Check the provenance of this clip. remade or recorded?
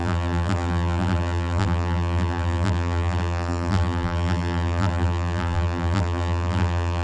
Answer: remade